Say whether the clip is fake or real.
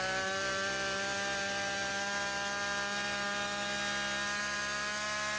real